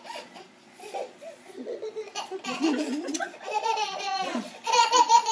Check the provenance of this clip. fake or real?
fake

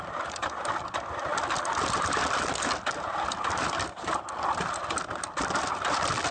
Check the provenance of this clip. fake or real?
real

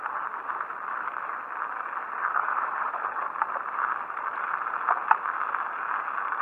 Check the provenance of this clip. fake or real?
real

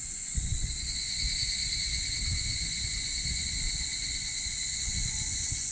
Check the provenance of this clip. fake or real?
fake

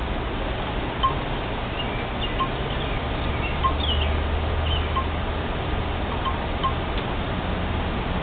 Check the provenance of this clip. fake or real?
real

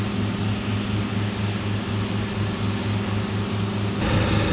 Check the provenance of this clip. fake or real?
real